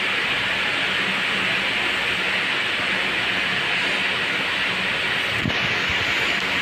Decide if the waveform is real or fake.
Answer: real